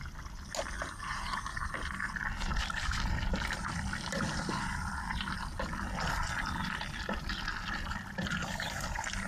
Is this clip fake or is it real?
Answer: real